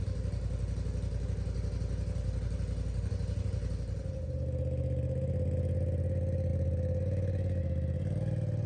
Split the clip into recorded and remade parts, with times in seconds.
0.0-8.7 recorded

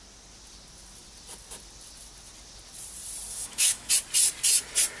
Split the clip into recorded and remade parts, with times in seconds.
0.0-3.3 recorded; 3.3-3.9 remade; 3.9-5.0 recorded

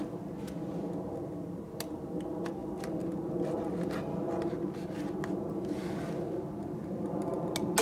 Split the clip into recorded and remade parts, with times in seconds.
0.0-7.8 recorded

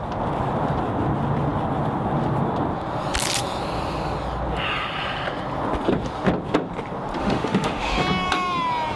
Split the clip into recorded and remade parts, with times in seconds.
0.0-7.2 recorded; 7.2-8.0 remade; 8.0-9.0 recorded

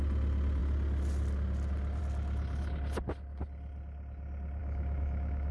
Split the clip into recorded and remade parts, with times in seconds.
0.0-4.6 recorded; 4.6-5.5 remade

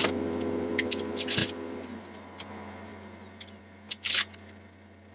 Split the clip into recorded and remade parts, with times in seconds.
0.0-5.1 recorded

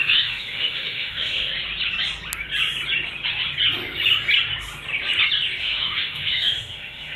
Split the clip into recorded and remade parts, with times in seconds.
0.0-1.5 remade; 1.5-5.6 recorded; 5.6-7.2 remade

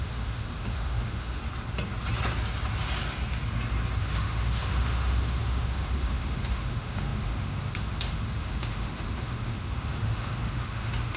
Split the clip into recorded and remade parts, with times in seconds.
0.0-1.4 remade; 1.4-4.0 recorded; 4.0-11.2 remade